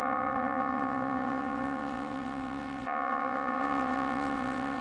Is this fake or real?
fake